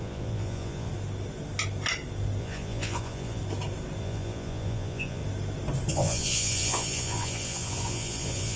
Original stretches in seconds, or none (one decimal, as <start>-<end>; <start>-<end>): 0.9-2.4; 3.4-4.0; 5.2-5.9